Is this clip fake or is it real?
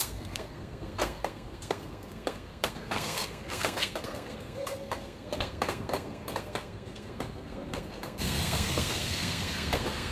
fake